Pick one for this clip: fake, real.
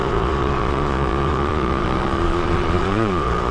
fake